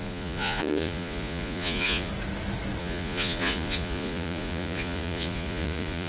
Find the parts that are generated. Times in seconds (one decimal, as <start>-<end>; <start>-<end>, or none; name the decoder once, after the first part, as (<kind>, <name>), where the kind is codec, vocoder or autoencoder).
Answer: 0.0-2.1 (vocoder, Vocos); 2.8-6.1